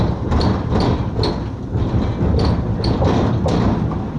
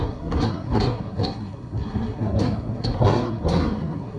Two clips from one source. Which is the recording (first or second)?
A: first